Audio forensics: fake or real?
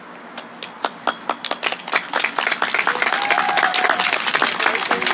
real